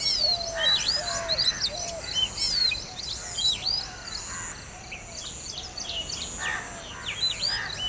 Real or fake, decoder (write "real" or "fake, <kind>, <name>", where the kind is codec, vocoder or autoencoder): real